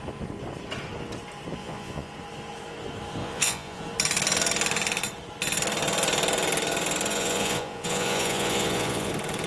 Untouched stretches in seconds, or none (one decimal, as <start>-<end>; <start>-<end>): 0.0-1.6; 2.1-3.2; 3.8-7.1; 9.1-9.5